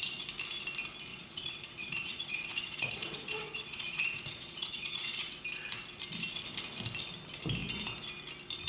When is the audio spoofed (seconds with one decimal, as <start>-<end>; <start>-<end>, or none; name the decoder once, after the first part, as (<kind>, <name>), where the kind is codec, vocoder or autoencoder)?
1.1-5.3 (vocoder, Vocos)